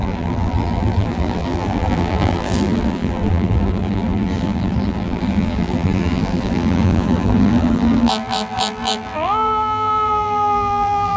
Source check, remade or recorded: remade